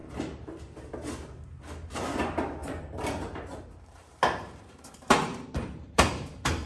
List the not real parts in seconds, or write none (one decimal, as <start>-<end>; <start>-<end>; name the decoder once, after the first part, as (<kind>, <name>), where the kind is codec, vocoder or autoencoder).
0.0-6.7 (vocoder, BigVGAN v2)